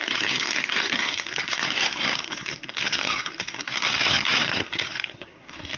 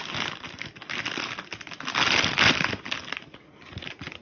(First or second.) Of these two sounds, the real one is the second